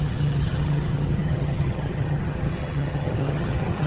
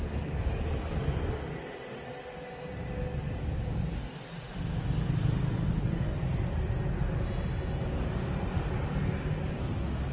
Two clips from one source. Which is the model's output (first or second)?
first